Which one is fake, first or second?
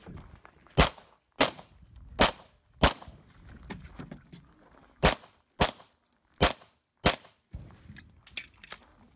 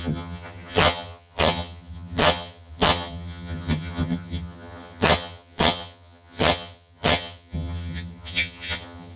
second